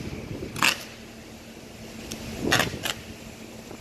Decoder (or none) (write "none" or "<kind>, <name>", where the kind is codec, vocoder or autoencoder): none